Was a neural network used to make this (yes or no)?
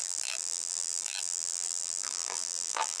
yes